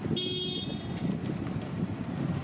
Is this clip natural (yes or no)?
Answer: yes